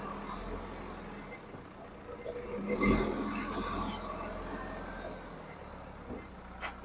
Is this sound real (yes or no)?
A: yes